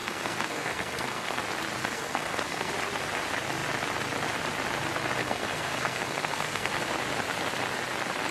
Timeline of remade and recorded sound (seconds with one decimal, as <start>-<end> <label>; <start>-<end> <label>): 0.0-1.4 remade; 1.4-1.8 recorded; 1.8-2.7 remade; 2.7-5.2 recorded; 5.2-6.9 remade; 6.9-8.3 recorded

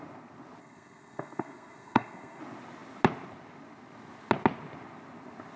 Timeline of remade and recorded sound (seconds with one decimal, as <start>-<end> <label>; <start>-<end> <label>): 0.0-0.6 recorded; 0.6-2.4 remade; 2.4-5.6 recorded

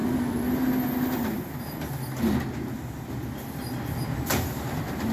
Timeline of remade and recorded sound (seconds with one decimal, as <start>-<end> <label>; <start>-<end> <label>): 0.0-5.1 recorded

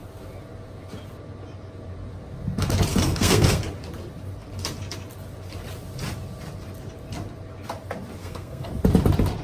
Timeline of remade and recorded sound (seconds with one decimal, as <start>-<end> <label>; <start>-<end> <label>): 0.0-2.9 recorded; 2.9-3.6 remade; 3.6-8.2 recorded; 8.2-8.7 remade; 8.7-9.4 recorded

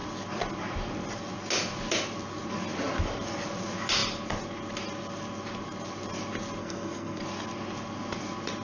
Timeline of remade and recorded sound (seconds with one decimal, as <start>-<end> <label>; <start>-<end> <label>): 0.0-6.6 recorded; 6.6-7.2 remade; 7.2-8.6 recorded

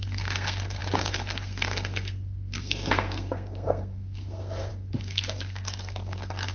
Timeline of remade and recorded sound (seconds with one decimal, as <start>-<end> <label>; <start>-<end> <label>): 0.0-6.5 remade